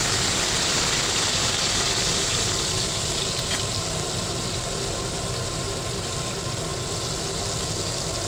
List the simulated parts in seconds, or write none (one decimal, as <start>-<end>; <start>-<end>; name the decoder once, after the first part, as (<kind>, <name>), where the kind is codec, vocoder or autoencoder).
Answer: none